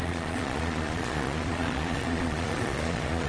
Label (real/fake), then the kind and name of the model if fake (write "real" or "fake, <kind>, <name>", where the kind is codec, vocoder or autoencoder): fake, vocoder, Vocos